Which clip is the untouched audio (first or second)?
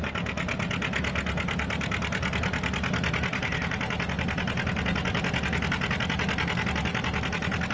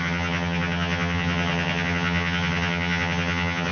first